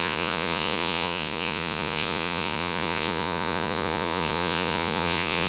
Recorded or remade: remade